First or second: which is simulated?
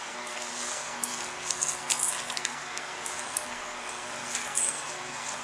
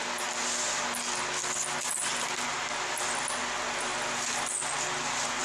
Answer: first